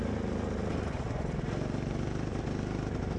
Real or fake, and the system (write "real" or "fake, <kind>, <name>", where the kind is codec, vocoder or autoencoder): real